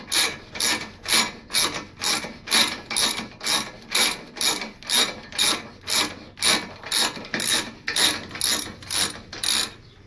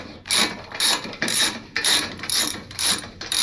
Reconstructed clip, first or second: second